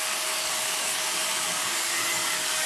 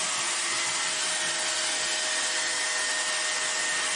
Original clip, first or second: second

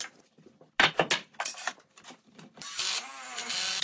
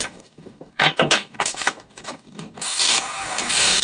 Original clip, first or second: first